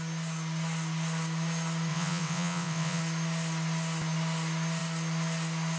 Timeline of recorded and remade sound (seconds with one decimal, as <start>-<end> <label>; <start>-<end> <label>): 0.0-1.9 recorded; 1.9-3.0 remade; 3.0-5.8 recorded